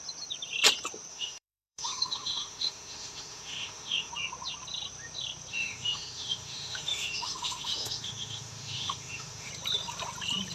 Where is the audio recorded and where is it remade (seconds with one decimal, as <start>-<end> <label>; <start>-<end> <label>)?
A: 0.0-1.1 recorded; 1.1-4.1 remade; 4.1-5.5 recorded; 5.5-9.5 remade; 9.5-10.5 recorded